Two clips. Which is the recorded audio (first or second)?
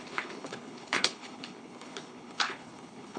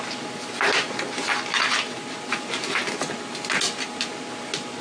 second